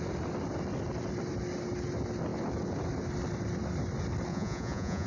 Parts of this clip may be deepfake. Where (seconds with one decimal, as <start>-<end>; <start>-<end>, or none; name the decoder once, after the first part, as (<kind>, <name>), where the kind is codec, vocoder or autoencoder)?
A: 4.3-5.1 (vocoder, Vocos)